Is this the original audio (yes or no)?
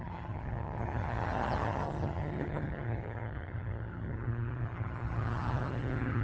no